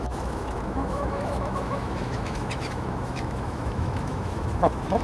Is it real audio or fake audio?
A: fake